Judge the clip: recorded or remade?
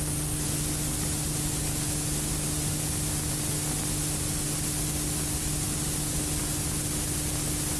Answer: recorded